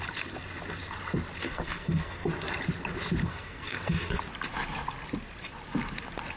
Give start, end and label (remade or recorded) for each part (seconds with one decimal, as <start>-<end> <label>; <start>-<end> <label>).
0.0-1.4 recorded; 1.4-2.3 remade; 2.3-3.2 recorded; 3.2-4.2 remade; 4.2-6.4 recorded